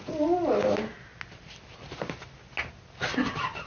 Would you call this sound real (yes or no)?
yes